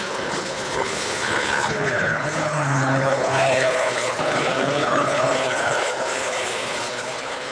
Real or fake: fake